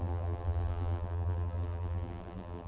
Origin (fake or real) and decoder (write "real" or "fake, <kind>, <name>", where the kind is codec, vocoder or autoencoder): fake, vocoder, BigVGAN v2